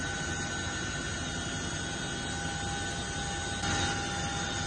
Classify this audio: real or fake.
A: real